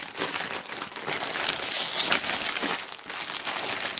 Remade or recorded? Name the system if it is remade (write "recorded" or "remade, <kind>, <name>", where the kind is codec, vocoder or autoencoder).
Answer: recorded